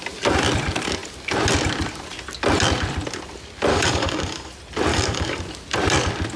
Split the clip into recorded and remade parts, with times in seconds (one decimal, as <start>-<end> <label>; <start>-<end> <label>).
0.0-3.7 recorded; 3.7-4.5 remade; 4.5-4.9 recorded; 4.9-5.4 remade; 5.4-6.4 recorded